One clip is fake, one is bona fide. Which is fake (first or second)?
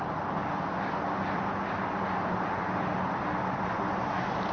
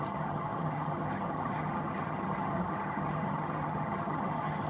second